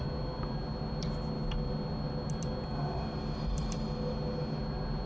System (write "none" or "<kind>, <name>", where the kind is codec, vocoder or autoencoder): none